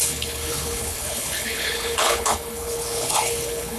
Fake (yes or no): yes